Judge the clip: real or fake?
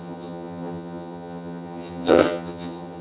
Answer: fake